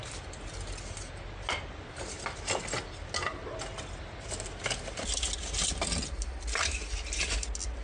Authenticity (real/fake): real